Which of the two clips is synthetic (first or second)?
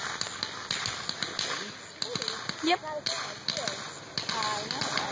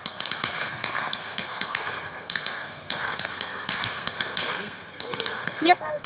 second